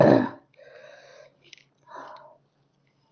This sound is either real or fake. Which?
real